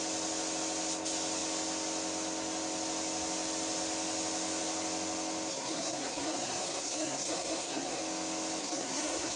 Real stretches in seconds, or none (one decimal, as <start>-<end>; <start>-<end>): 0.0-5.5; 8.0-8.6